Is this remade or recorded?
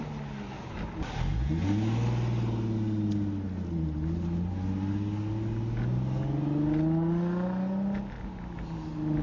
recorded